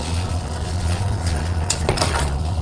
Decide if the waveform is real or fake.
fake